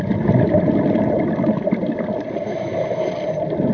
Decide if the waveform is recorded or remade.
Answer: recorded